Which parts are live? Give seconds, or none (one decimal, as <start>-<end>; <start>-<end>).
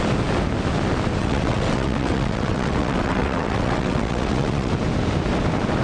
0.0-1.2; 4.7-5.8